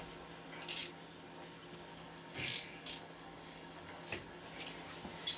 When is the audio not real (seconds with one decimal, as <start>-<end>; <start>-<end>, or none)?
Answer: 1.9-4.4